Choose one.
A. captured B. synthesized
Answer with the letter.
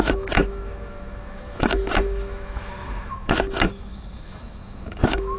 B